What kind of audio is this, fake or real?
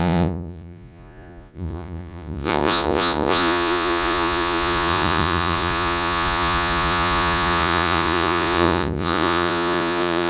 fake